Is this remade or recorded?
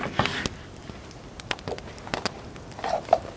recorded